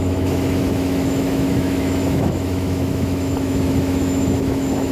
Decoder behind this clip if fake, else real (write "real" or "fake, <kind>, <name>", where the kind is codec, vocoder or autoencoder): fake, autoencoder, DAC-VAE